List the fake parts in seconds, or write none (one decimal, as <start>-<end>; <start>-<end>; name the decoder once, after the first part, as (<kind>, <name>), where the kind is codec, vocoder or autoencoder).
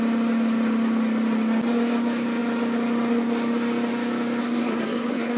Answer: 4.4-5.4 (codec, SNAC)